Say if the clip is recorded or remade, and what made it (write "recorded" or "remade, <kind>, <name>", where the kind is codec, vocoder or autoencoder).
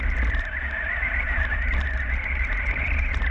remade, vocoder, BigVGAN v2